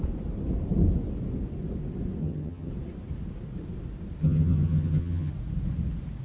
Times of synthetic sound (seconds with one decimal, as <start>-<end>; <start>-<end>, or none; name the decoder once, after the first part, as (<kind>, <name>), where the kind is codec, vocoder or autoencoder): 2.2-2.7 (vocoder, HiFi-GAN); 4.2-5.3